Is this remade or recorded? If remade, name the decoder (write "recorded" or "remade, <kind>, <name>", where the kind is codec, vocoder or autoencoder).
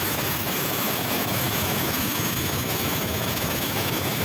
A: remade, autoencoder, DAC-VAE